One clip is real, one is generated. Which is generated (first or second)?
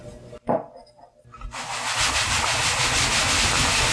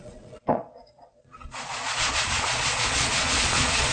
second